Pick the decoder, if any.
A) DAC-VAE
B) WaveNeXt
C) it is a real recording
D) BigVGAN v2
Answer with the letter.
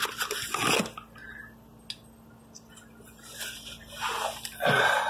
C